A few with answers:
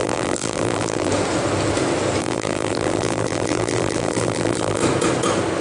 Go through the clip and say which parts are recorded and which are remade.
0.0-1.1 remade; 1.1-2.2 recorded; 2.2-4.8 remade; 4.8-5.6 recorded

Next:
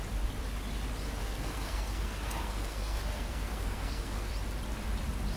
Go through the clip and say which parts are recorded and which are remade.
0.0-1.2 recorded; 1.2-4.3 remade; 4.3-5.4 recorded

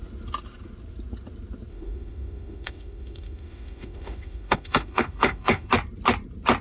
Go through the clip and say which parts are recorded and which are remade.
0.0-1.7 recorded; 1.7-5.7 remade; 5.7-6.6 recorded

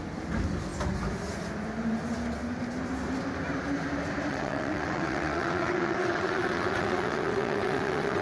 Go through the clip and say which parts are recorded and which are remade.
0.0-4.3 recorded; 4.3-8.2 remade

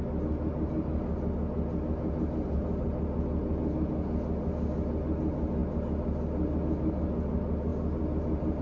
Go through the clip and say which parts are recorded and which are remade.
0.0-8.6 recorded

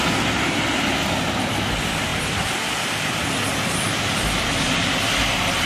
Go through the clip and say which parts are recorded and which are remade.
0.0-2.1 recorded; 2.1-3.1 remade; 3.1-5.7 recorded